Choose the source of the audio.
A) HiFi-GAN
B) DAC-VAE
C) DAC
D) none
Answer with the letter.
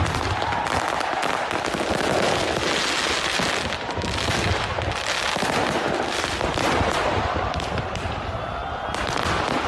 D